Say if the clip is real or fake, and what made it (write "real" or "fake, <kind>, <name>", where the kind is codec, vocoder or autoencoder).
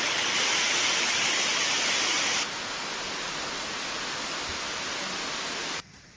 real